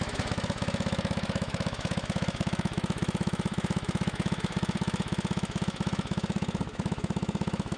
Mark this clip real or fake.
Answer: fake